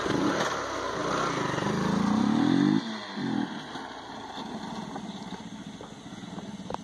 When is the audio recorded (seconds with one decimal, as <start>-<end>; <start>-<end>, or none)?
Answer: 0.0-6.8